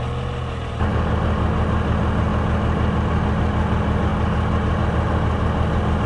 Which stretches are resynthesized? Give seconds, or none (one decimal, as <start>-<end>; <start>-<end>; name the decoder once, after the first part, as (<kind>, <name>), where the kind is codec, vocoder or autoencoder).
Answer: none